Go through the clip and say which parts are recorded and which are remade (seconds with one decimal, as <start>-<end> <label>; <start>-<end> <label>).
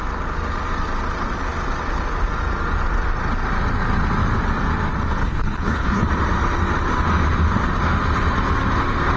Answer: 0.0-5.2 recorded; 5.2-6.0 remade; 6.0-9.2 recorded